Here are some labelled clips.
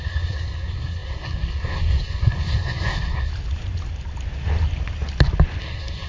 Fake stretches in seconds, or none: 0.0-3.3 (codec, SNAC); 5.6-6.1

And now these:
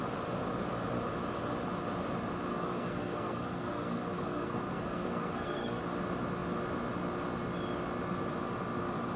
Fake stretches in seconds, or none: 2.5-5.8 (codec, SNAC)

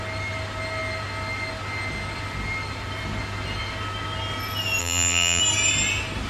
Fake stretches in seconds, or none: 4.8-5.4 (vocoder, BigVGAN v2)

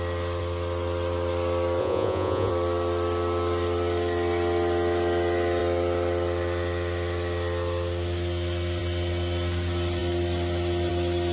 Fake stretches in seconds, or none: 1.8-2.5 (vocoder, Vocos)

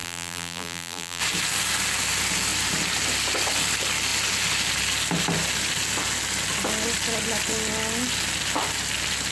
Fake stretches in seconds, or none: 0.0-1.2 (vocoder, BigVGAN v2)

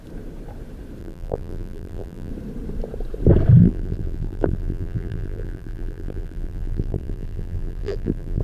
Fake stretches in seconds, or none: 1.0-2.3 (vocoder, BigVGAN v2); 3.6-8.4